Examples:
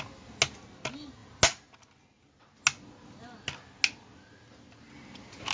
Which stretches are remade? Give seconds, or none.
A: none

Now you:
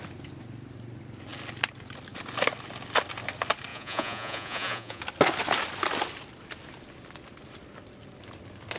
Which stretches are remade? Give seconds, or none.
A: 3.7-5.0 (vocoder, Vocos)

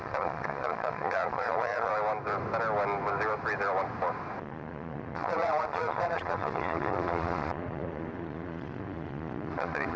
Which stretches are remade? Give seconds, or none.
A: 0.0-1.9 (vocoder, Vocos); 4.4-10.0